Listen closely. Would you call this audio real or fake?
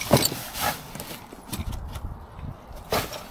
fake